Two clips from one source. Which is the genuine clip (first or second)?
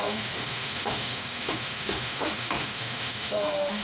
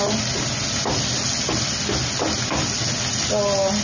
second